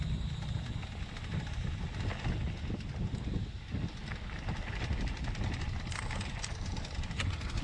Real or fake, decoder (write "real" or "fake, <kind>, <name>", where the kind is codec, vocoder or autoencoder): real